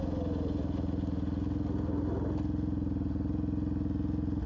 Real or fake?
real